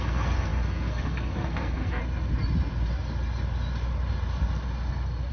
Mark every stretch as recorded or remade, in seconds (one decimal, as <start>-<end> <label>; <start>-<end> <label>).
0.0-2.0 remade; 2.0-5.3 recorded